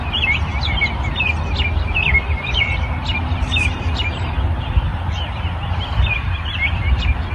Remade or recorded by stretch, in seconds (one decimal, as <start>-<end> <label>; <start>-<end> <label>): 0.0-4.9 recorded; 4.9-5.4 remade; 5.4-7.3 recorded